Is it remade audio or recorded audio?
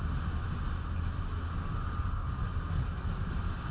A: recorded